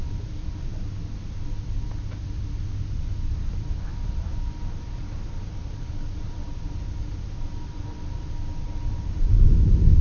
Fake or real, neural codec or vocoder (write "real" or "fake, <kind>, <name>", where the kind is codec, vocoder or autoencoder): real